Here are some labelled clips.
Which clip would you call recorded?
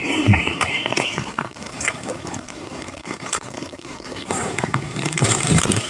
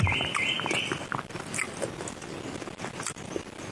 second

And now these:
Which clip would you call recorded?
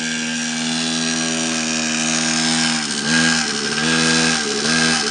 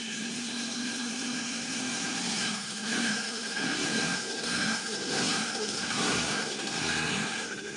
first